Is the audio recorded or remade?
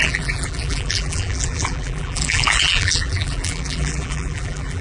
remade